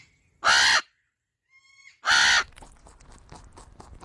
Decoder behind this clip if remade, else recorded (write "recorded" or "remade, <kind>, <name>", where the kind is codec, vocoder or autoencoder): recorded